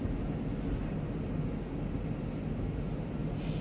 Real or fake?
real